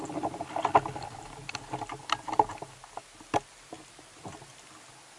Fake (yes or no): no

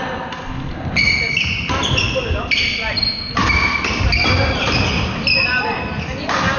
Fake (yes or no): no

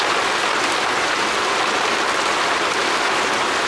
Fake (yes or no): no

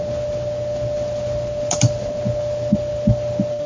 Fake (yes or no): no